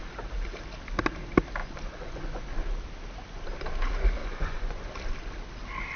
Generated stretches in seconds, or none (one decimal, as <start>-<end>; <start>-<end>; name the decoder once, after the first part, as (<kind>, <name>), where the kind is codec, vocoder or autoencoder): 1.6-2.4 (vocoder, Vocos); 4.2-4.8